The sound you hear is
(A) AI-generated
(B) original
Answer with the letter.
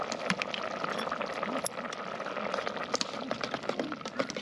B